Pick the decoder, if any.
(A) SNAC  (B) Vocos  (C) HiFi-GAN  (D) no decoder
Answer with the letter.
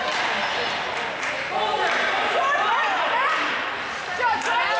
D